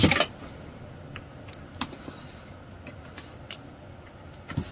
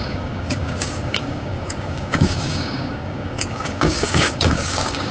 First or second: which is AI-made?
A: second